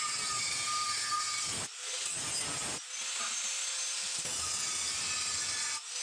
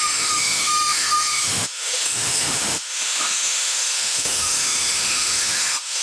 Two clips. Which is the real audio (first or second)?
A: first